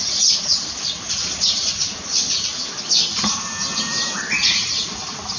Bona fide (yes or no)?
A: yes